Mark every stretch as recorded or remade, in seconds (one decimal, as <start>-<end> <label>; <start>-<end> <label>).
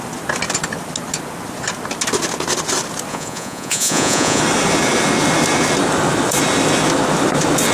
0.0-3.1 recorded; 3.1-4.4 remade; 4.4-7.7 recorded